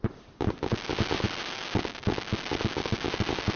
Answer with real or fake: real